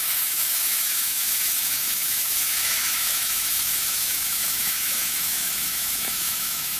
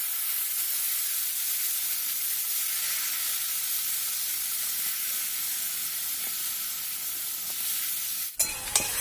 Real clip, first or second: second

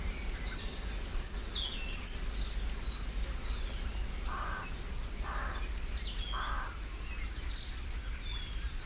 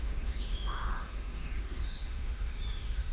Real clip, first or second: first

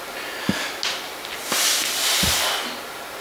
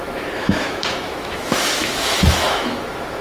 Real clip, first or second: first